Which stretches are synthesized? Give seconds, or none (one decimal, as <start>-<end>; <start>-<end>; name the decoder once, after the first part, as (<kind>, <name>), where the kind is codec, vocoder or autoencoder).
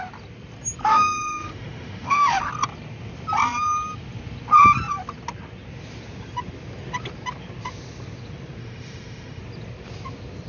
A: 0.8-2.5 (autoencoder, DAC-VAE); 8.6-9.4